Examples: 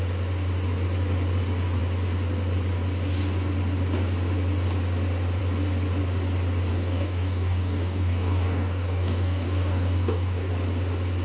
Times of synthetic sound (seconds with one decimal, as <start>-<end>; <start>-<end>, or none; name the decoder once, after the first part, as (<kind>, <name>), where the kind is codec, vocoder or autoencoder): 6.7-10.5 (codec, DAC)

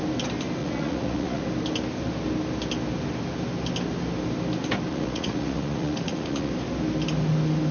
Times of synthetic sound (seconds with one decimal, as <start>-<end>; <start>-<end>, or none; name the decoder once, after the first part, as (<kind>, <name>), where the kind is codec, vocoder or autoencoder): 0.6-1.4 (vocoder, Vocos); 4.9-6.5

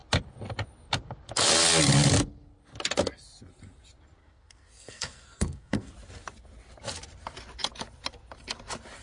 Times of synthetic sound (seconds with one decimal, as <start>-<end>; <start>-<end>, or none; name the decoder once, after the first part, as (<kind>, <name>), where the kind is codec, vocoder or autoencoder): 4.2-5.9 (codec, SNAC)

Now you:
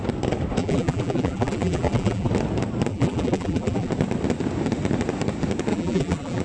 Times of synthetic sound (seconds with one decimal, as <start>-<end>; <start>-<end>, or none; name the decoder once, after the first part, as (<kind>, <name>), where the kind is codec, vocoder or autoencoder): 0.6-2.3 (vocoder, BigVGAN v2); 2.9-3.9; 5.7-6.4